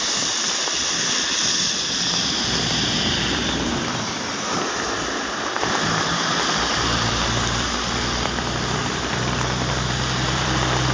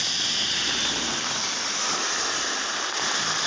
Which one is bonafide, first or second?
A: second